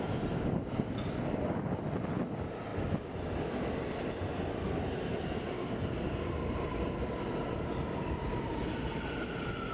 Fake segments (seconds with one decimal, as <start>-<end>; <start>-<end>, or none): none